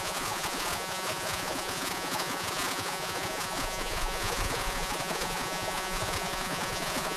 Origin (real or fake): fake